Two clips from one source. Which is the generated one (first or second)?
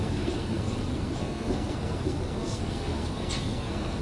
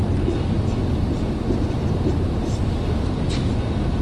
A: first